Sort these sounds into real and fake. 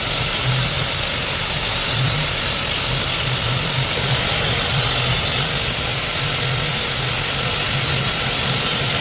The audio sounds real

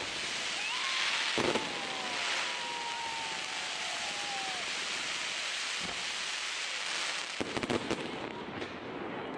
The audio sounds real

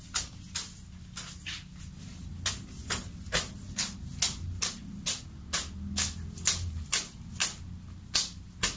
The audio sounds real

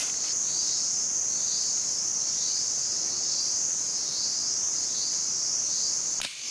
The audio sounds real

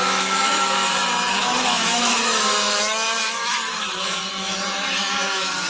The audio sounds fake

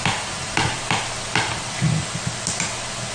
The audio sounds real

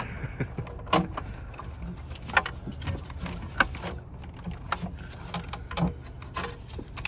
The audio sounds real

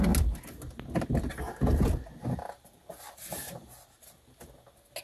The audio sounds real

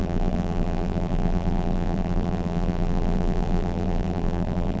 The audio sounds fake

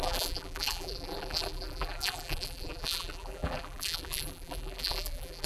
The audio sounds fake